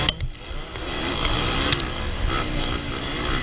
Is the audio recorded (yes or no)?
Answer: yes